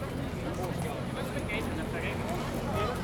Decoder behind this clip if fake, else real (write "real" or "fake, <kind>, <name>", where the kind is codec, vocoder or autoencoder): real